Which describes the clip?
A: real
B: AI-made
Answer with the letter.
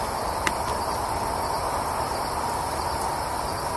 A